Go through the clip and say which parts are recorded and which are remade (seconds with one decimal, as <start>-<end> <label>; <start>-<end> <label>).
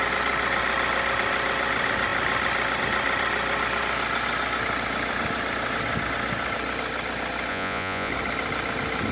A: 0.0-7.5 recorded; 7.5-8.1 remade; 8.1-9.1 recorded